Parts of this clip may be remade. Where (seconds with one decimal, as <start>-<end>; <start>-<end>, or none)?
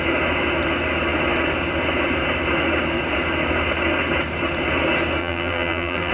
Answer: 5.2-6.1